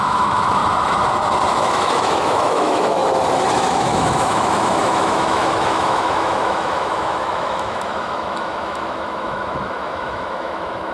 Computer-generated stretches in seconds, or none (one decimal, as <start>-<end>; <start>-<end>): 0.0-0.6; 1.5-3.0; 3.5-10.9